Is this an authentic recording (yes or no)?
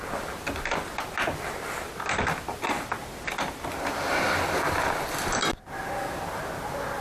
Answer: yes